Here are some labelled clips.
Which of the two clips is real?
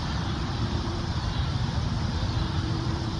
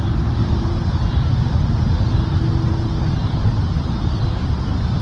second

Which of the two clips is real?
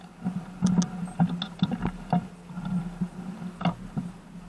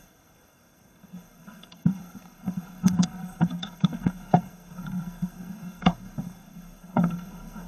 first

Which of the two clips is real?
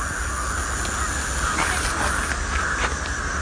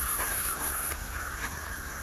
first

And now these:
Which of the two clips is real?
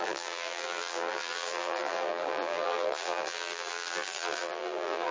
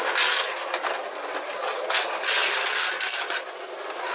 second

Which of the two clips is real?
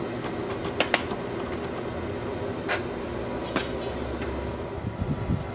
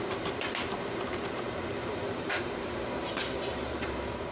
first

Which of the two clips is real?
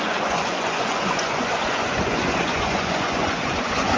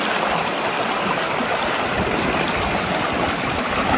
second